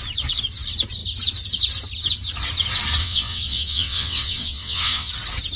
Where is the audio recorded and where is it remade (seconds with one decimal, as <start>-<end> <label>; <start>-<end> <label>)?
0.0-3.0 recorded; 3.0-5.1 remade; 5.1-5.6 recorded